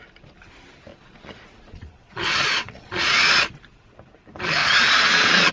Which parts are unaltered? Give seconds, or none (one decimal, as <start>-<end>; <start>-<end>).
0.0-0.9; 3.4-4.6